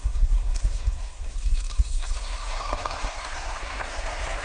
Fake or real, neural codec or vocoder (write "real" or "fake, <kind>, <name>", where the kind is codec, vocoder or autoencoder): fake, codec, SNAC